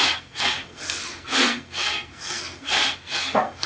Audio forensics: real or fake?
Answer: fake